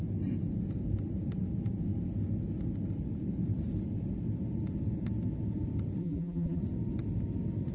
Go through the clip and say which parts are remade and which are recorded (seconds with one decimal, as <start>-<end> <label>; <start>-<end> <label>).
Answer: 0.0-6.0 recorded; 6.0-6.6 remade; 6.6-7.7 recorded